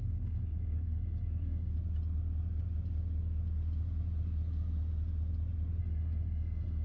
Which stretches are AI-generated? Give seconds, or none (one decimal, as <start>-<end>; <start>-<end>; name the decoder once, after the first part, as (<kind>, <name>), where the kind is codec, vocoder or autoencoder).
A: 0.0-1.7 (codec, SNAC); 5.8-6.8